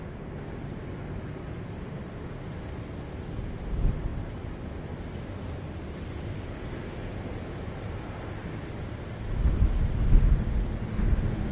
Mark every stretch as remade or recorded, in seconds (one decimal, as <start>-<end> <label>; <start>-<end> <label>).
0.0-4.1 recorded; 4.1-4.7 remade; 4.7-8.4 recorded; 8.4-9.1 remade; 9.1-11.5 recorded